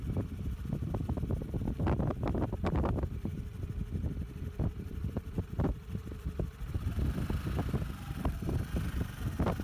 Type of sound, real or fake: fake